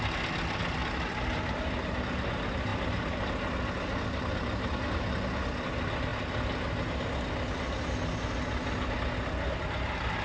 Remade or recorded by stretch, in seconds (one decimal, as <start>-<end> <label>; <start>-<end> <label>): 0.0-10.2 recorded